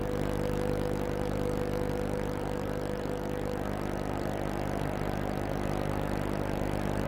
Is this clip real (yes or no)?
yes